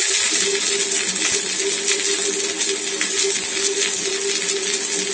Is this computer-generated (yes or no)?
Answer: no